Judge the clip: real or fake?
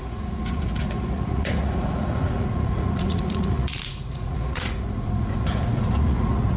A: fake